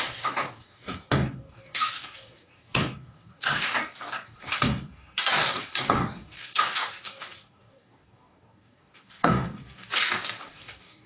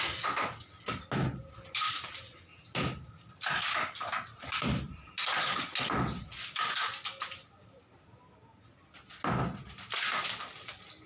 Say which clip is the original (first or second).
second